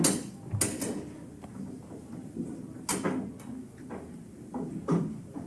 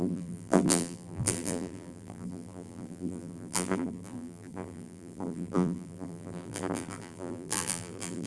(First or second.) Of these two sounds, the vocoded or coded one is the second